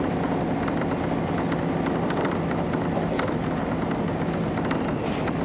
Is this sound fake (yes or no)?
no